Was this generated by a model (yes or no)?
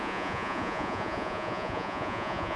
yes